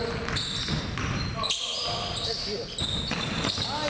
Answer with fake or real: real